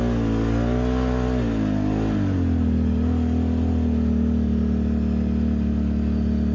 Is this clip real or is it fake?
real